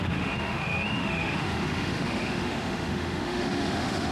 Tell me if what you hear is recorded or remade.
remade